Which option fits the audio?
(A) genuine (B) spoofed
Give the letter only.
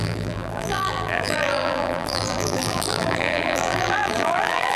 B